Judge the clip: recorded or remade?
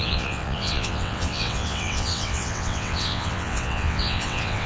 remade